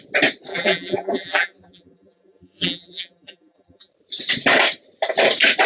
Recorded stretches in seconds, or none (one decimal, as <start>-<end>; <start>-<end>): 0.0-0.5; 3.9-5.7